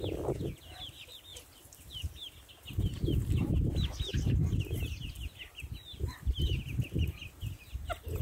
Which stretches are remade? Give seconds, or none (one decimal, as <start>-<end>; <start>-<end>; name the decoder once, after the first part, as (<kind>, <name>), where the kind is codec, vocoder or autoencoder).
4.1-4.8 (vocoder, BigVGAN v2)